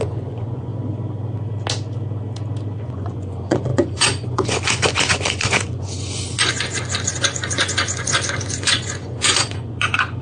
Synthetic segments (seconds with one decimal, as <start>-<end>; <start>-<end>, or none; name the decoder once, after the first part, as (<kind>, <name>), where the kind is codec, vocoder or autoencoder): 0.0-0.7 (vocoder, Vocos); 2.8-10.2